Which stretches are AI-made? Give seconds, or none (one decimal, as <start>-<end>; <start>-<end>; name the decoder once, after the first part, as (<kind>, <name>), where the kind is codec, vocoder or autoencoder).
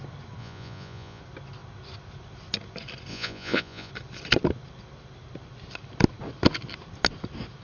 0.4-1.2 (vocoder, Vocos); 3.1-3.9